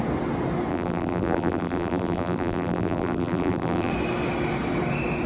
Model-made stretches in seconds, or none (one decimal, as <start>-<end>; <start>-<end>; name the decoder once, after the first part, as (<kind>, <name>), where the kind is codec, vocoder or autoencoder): 0.7-3.9 (vocoder, BigVGAN v2)